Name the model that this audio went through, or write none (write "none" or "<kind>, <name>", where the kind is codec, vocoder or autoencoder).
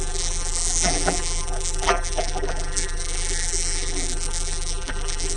vocoder, BigVGAN v2